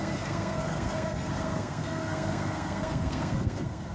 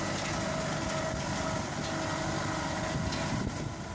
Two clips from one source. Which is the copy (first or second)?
first